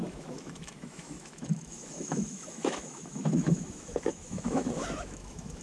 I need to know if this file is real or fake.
fake